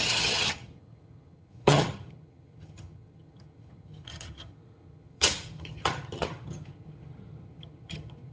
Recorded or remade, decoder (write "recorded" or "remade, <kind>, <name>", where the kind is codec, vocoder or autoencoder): remade, vocoder, HiFi-GAN